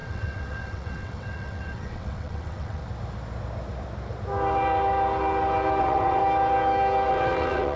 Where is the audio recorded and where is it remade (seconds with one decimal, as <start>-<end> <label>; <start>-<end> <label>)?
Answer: 0.0-2.8 remade; 2.8-5.8 recorded; 5.8-6.2 remade; 6.2-7.1 recorded; 7.1-7.8 remade